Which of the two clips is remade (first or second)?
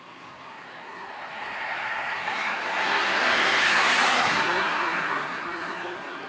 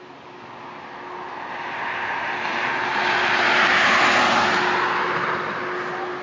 first